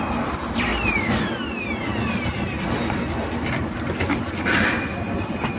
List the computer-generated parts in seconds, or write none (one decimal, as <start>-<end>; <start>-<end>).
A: none